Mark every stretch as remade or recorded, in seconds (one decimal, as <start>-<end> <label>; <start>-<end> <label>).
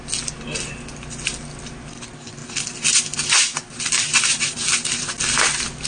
0.0-5.9 recorded